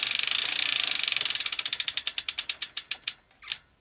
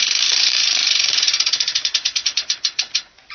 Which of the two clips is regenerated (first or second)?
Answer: second